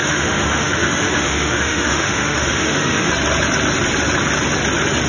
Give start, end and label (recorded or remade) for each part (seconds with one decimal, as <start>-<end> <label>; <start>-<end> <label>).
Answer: 0.0-3.1 remade; 3.1-5.1 recorded